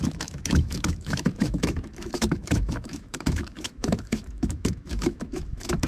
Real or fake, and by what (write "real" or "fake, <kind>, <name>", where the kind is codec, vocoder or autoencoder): fake, autoencoder, DAC-VAE